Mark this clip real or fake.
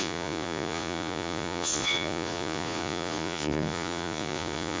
fake